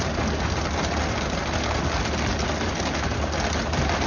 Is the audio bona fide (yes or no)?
yes